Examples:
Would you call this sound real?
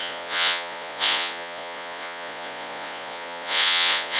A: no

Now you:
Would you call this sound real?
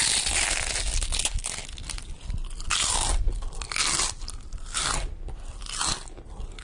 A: yes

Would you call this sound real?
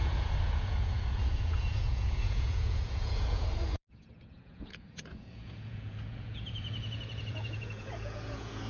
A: no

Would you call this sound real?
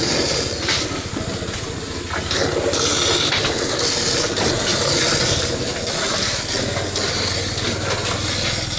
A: yes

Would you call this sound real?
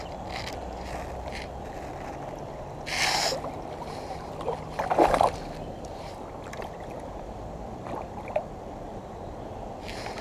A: yes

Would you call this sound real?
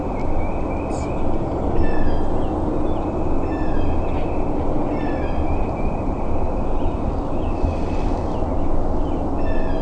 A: yes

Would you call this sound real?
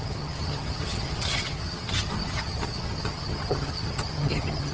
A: no